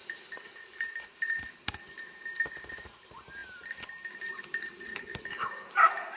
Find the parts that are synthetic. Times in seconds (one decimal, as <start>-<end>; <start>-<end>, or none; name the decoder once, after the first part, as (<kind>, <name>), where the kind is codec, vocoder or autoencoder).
0.0-0.6 (codec, DAC); 4.9-5.7